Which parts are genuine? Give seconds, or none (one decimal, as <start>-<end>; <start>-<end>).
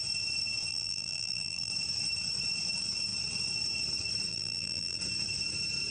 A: 0.0-0.7; 1.7-4.3; 5.0-5.9